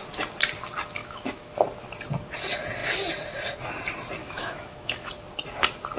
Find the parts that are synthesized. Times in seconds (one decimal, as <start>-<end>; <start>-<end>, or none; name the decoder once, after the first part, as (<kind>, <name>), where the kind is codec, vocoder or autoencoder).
1.0-1.5 (autoencoder, DAC-VAE); 4.2-5.1